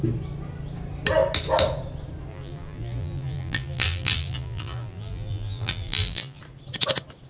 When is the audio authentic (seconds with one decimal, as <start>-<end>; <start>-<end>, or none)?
0.0-2.3; 6.4-7.3